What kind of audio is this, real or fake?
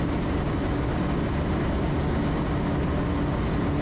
real